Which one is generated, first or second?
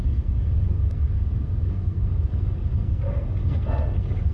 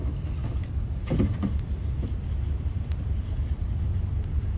first